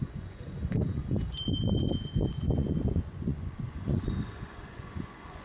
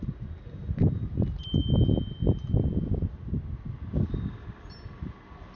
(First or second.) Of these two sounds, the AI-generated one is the first